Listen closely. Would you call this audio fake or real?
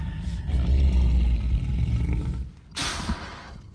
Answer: real